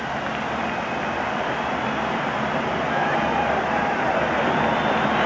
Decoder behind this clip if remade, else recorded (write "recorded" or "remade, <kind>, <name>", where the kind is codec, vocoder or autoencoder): recorded